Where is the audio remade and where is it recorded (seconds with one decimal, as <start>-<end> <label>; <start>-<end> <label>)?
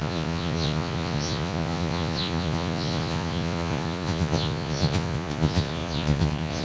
0.0-6.6 remade